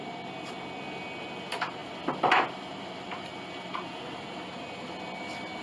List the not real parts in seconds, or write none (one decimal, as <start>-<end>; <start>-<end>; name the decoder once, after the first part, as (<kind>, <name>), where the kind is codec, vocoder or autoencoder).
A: none